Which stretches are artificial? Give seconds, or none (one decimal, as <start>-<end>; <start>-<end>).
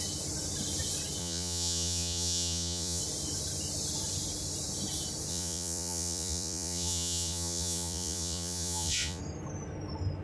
1.2-3.0; 5.3-9.2